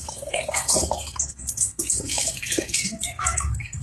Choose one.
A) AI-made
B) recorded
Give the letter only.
A